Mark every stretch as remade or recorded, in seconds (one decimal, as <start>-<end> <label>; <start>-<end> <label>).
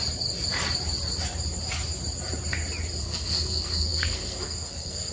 0.0-3.0 recorded; 3.0-5.1 remade